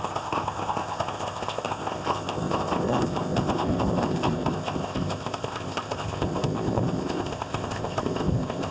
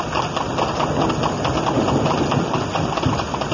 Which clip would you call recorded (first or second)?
second